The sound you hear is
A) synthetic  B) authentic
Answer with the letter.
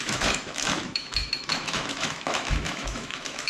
A